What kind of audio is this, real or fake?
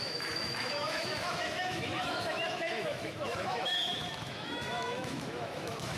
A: fake